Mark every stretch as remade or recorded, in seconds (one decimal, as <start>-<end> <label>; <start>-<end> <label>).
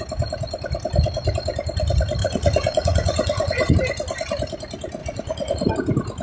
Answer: 0.0-2.2 recorded; 2.2-3.7 remade; 3.7-5.0 recorded; 5.0-5.7 remade; 5.7-6.2 recorded